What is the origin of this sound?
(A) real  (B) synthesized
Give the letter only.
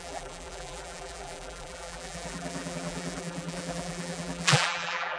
B